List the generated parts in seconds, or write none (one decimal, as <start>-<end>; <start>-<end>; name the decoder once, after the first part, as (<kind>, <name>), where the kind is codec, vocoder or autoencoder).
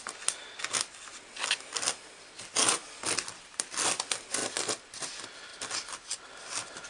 none